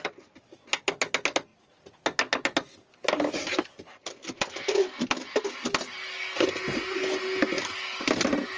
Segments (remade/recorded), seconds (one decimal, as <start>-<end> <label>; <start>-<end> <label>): 0.0-8.6 recorded